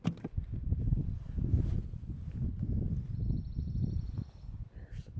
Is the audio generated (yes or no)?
no